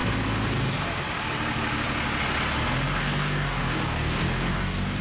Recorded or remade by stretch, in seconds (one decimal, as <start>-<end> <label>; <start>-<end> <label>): 0.0-3.0 recorded; 3.0-5.0 remade